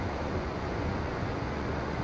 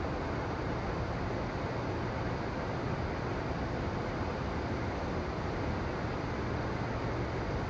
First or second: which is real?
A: second